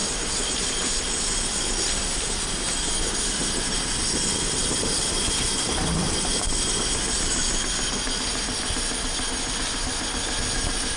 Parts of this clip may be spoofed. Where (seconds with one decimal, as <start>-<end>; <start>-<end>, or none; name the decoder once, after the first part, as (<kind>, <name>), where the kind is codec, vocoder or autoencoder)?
none